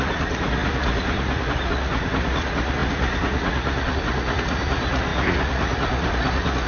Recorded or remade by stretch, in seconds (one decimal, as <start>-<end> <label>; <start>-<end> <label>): 0.0-6.7 remade